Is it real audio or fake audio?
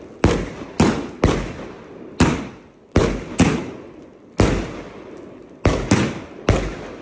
real